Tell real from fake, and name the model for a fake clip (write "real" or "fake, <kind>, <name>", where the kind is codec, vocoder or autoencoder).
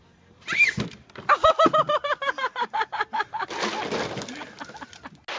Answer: real